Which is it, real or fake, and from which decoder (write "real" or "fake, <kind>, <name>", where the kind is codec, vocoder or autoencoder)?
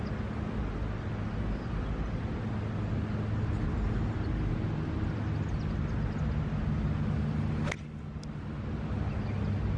real